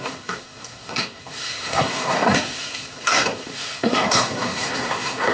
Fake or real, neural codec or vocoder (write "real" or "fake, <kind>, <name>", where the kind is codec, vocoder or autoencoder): fake, codec, SNAC